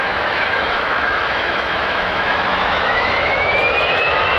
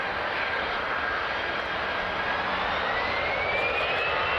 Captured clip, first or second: second